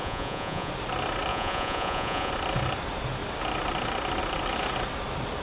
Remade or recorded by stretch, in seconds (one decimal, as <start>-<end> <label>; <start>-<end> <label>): 0.0-0.7 remade; 0.7-1.3 recorded; 1.3-2.3 remade; 2.3-5.4 recorded

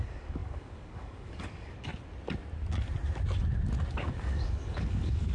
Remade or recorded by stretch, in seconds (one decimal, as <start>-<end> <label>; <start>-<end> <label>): 0.0-1.9 remade; 1.9-3.9 recorded; 3.9-5.3 remade